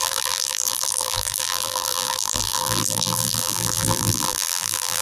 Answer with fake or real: fake